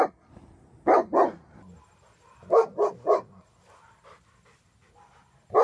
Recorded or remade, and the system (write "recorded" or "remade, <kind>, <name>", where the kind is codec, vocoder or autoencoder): recorded